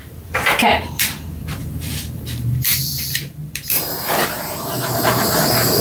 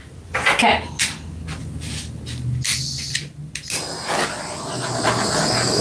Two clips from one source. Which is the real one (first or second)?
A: second